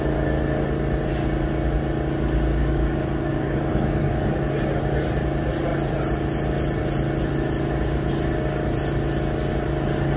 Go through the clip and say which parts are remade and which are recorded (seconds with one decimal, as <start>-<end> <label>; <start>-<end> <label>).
0.0-2.5 recorded; 2.5-4.3 remade; 4.3-10.2 recorded